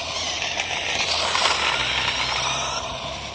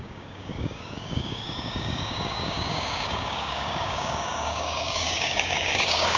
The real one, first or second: first